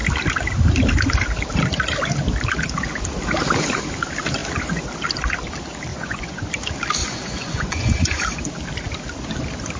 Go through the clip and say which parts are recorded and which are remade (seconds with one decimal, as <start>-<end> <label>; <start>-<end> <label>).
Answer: 0.0-5.9 recorded; 5.9-6.5 remade; 6.5-7.0 recorded; 7.0-8.2 remade; 8.2-9.8 recorded